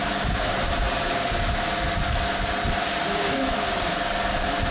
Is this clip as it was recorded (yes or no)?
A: yes